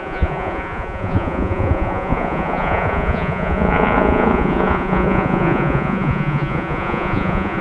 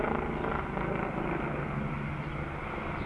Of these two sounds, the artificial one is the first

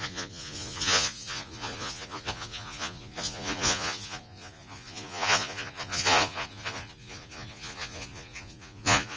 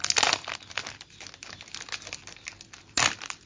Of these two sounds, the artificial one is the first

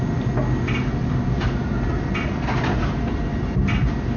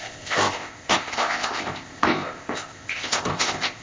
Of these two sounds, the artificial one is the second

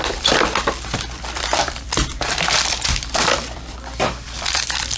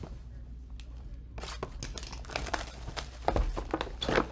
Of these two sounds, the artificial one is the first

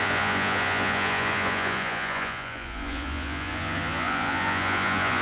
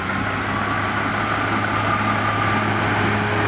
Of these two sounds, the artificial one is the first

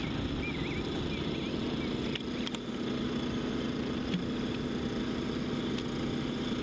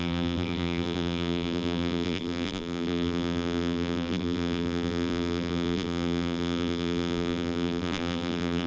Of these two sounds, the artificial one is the second